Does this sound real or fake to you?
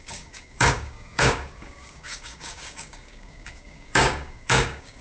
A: fake